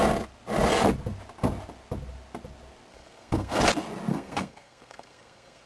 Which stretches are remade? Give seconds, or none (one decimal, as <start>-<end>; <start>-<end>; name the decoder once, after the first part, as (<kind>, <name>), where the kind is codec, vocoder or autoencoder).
2.9-3.6 (codec, SNAC); 4.1-5.7